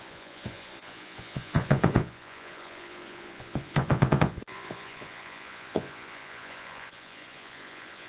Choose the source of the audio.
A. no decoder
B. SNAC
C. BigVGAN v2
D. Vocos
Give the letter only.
D